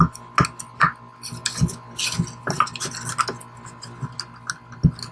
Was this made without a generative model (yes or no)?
yes